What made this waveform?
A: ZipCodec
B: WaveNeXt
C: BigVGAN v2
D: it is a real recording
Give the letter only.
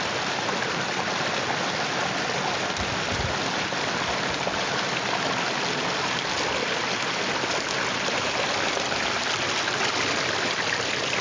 D